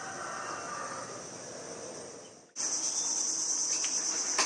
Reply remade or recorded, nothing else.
recorded